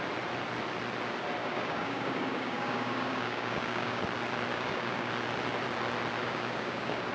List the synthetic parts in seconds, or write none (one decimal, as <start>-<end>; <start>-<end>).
1.4-4.0; 4.5-5.1; 6.2-7.1